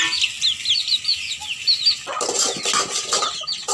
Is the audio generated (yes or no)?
no